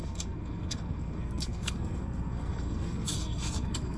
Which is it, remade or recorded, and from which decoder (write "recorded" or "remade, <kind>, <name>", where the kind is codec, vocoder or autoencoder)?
remade, codec, SNAC